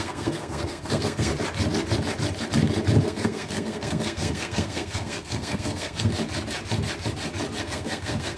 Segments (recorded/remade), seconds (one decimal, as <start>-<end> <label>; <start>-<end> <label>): 0.0-1.3 remade; 1.3-3.0 recorded; 3.0-6.1 remade; 6.1-7.6 recorded; 7.6-8.4 remade